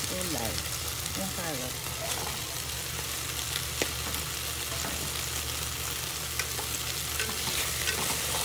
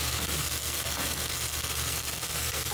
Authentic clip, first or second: first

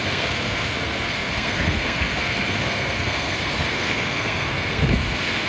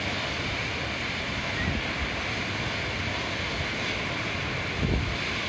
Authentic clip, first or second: second